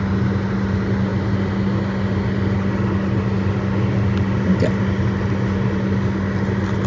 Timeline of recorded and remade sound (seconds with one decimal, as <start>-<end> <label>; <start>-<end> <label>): 0.0-6.9 recorded